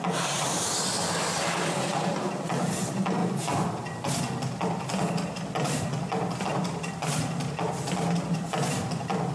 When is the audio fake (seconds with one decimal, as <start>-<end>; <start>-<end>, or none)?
0.0-3.2; 6.4-9.3